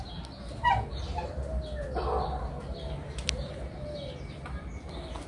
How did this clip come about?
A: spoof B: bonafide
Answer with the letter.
B